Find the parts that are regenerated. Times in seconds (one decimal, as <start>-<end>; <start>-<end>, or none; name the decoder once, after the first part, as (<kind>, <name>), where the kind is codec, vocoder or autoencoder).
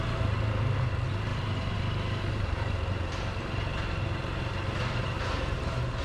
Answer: 1.3-4.4 (vocoder, BigVGAN v2)